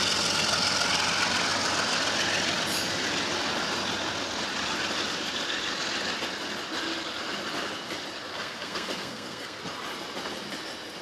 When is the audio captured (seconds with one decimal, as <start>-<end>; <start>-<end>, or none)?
0.0-8.3; 9.6-11.0

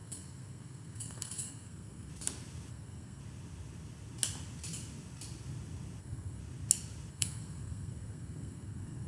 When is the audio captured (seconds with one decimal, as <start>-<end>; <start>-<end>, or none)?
2.1-2.7; 3.2-6.0; 6.4-7.1

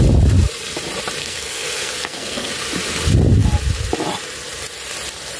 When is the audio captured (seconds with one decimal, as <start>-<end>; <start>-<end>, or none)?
0.0-1.2; 2.5-5.4

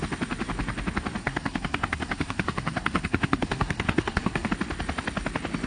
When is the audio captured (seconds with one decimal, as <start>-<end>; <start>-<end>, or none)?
0.0-1.2; 4.5-5.7